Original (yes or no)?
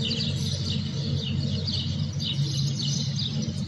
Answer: yes